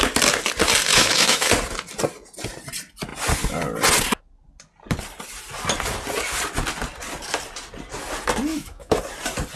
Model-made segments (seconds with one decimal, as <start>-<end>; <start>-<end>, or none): 0.9-1.5; 8.5-9.0